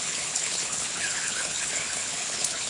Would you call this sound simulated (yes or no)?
yes